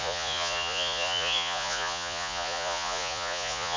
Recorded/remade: remade